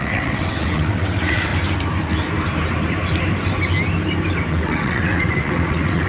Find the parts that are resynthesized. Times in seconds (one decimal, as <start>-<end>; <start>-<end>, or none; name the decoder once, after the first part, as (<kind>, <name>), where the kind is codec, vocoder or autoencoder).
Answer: 0.0-1.5 (vocoder, WaveNeXt); 4.5-6.1

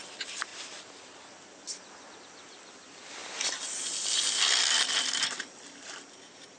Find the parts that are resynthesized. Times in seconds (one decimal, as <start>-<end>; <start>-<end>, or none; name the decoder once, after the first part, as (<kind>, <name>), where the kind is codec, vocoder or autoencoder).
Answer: none

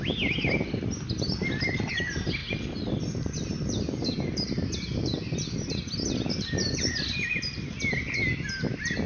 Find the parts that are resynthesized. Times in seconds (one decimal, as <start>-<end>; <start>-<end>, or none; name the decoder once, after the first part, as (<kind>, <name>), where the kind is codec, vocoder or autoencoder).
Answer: none

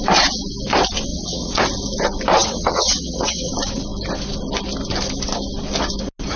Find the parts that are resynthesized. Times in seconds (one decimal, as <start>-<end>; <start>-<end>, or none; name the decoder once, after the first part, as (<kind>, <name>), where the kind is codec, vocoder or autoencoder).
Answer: 1.1-1.6 (vocoder, WaveNeXt); 2.4-3.5

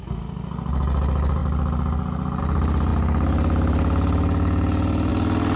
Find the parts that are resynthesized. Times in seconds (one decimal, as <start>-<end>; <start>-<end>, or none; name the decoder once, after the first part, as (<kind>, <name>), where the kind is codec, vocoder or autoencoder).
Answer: none

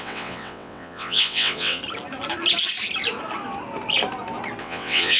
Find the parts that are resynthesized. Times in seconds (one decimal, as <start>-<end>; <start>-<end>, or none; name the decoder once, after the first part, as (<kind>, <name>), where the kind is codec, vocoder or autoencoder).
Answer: 0.0-1.8 (vocoder, WaveNeXt); 4.6-5.2

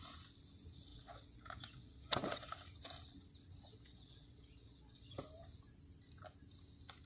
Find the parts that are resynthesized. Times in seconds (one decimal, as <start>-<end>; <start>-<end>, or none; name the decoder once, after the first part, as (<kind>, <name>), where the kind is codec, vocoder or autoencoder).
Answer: 0.9-2.5 (vocoder, WaveNeXt); 3.7-5.2

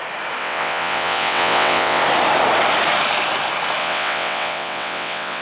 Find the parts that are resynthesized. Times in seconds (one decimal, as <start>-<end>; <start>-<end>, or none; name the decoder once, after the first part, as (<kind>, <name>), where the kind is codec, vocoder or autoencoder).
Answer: 0.4-2.0 (vocoder, WaveNeXt); 3.8-5.4